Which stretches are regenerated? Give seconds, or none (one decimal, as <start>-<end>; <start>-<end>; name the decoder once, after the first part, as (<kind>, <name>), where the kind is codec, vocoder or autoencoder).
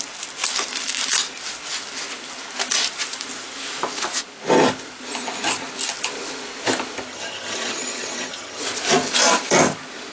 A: 7.1-8.6 (vocoder, HiFi-GAN)